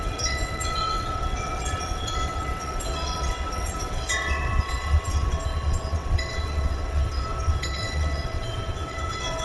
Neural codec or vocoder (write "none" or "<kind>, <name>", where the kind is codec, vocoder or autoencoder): vocoder, WaveNeXt